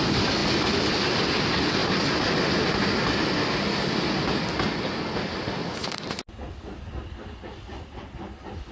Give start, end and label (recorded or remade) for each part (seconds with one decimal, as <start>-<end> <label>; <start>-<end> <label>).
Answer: 0.0-8.7 recorded